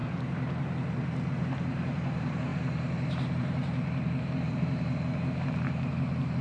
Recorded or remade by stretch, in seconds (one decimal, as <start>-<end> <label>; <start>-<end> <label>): 0.0-6.4 remade